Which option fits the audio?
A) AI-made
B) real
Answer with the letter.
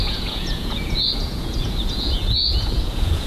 A